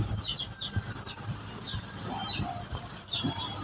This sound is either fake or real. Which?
real